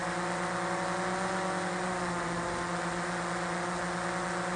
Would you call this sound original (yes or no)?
yes